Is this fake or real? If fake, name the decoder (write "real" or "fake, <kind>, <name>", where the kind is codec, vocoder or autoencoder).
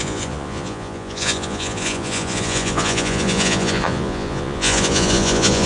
fake, vocoder, Vocos